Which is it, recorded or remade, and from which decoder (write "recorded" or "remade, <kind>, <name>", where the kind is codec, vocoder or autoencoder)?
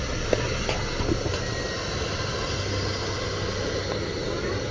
recorded